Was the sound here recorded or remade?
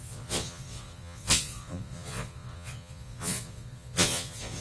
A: remade